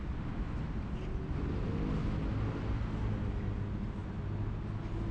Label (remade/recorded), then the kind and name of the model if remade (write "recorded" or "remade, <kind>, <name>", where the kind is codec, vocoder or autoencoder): recorded